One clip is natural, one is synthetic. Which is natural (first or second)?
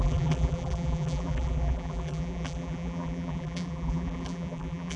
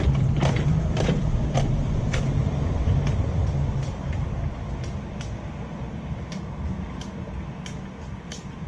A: second